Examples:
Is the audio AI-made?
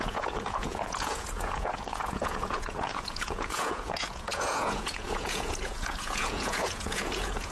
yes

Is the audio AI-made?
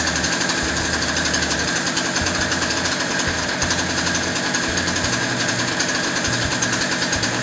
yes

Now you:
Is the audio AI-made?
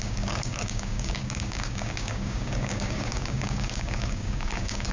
yes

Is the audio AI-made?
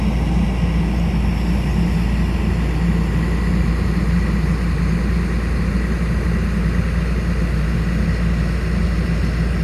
no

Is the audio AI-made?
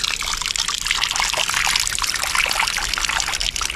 no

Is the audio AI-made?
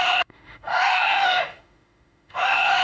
yes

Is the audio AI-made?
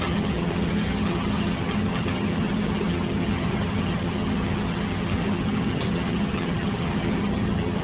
yes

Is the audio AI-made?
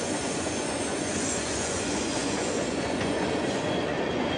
yes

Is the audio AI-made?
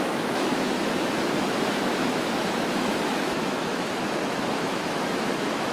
yes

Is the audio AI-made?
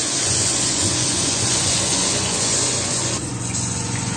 yes